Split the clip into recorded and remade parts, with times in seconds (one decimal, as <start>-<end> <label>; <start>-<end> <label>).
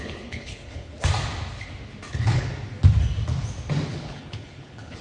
0.0-0.9 remade; 0.9-2.1 recorded; 2.1-2.5 remade; 2.5-3.9 recorded; 3.9-5.0 remade